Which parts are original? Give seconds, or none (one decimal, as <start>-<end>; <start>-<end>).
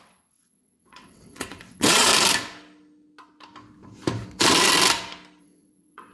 2.1-5.4